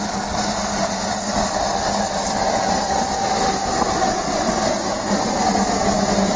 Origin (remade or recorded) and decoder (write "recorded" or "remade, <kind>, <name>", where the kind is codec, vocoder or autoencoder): recorded